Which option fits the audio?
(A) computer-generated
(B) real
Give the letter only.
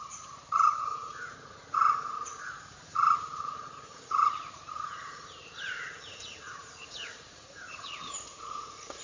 A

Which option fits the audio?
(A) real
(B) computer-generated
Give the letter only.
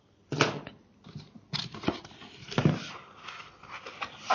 A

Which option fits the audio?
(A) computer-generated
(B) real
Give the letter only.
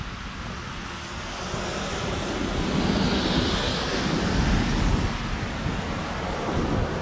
B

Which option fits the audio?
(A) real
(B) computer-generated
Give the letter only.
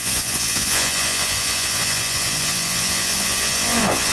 B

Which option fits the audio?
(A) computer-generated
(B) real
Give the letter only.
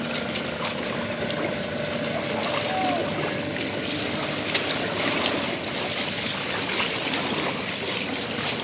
B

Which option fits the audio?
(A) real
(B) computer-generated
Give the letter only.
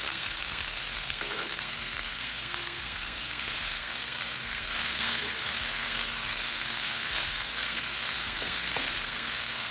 B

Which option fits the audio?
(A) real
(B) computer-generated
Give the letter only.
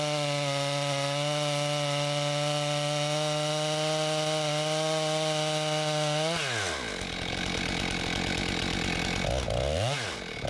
A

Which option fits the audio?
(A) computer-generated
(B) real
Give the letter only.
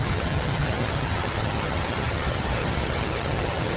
A